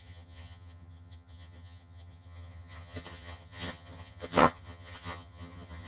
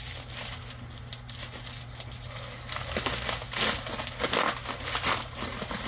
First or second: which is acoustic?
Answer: second